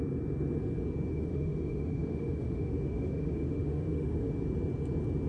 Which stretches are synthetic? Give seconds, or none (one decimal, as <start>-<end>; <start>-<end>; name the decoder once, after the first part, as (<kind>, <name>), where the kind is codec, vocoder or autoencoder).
1.1-4.3 (autoencoder, DAC-VAE)